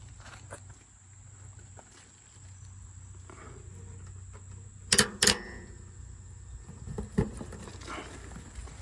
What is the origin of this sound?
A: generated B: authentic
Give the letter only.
B